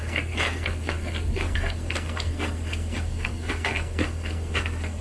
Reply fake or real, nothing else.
fake